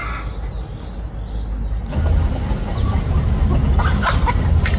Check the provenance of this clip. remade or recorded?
recorded